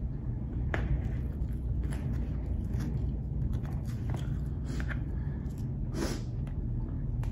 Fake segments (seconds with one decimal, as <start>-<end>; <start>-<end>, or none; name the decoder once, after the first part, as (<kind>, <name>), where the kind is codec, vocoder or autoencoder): 0.5-4.2 (vocoder, BigVGAN v2)

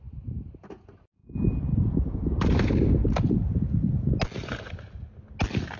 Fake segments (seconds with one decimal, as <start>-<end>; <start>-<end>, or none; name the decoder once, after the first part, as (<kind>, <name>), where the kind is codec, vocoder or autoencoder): none

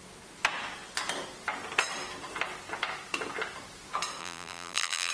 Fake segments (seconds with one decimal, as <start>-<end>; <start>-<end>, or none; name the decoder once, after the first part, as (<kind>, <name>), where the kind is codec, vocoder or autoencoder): 4.2-5.1 (vocoder, BigVGAN v2)

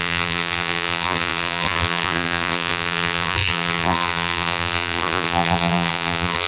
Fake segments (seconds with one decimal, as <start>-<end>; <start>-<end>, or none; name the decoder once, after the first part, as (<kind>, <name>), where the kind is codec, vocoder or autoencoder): 0.0-6.5 (vocoder, BigVGAN v2)

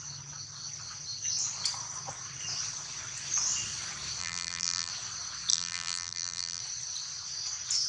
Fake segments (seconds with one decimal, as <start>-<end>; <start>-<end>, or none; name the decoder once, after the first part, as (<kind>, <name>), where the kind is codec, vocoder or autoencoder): 4.2-4.9 (vocoder, BigVGAN v2); 5.5-6.6

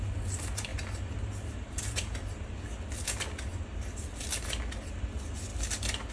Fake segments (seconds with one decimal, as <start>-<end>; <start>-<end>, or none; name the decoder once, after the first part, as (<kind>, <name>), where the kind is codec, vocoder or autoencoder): 0.7-2.6 (vocoder, BigVGAN v2)

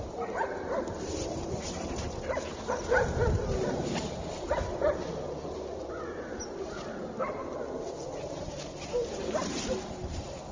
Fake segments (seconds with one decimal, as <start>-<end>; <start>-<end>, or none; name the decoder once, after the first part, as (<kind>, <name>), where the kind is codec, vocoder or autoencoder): 0.0-7.4 (vocoder, BigVGAN v2); 8.2-10.5